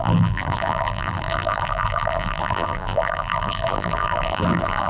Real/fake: fake